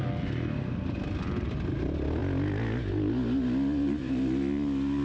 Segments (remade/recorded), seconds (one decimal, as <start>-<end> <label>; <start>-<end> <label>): 0.0-5.0 recorded